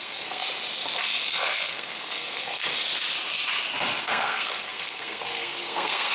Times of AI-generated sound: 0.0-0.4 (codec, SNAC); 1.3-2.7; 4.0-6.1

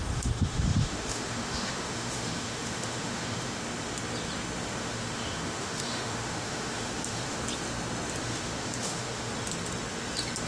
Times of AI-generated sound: 0.0-3.6 (autoencoder, DAC-VAE); 4.8-7.4; 8.2-9.3

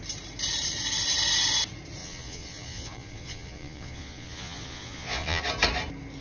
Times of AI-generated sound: 2.0-5.4 (vocoder, Vocos)

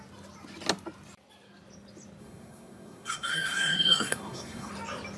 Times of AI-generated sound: 2.2-4.7 (codec, SNAC)

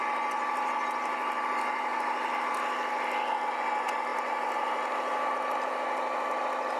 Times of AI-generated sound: none

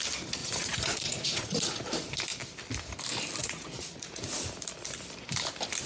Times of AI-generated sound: 0.4-1.8 (vocoder, Vocos); 3.4-4.2